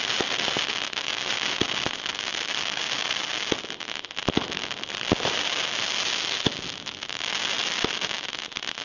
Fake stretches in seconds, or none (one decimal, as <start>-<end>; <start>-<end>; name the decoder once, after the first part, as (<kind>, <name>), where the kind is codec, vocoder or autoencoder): none